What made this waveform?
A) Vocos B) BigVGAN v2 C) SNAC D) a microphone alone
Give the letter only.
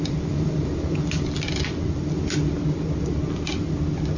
D